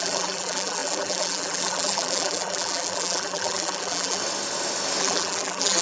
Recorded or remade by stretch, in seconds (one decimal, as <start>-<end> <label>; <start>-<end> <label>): 0.0-4.2 remade; 4.2-5.0 recorded; 5.0-5.8 remade